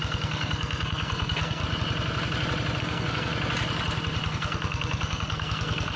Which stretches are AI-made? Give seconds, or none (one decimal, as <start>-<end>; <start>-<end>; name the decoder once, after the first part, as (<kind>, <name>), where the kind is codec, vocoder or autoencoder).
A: 0.0-1.6 (codec, SNAC); 2.8-3.3; 4.3-6.0